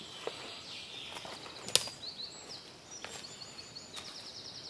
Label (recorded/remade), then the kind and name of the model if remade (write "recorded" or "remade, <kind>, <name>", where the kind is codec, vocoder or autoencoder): recorded